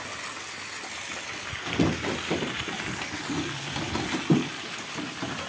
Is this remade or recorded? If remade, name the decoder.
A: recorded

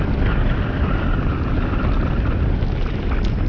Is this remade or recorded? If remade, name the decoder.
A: recorded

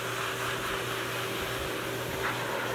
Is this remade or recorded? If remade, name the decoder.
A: recorded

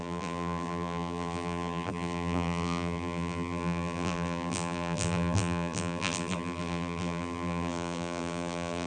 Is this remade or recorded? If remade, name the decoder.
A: remade, vocoder, BigVGAN v2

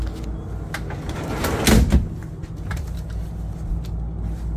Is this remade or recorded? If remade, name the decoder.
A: recorded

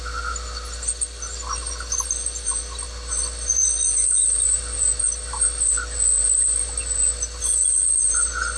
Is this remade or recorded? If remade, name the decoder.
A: recorded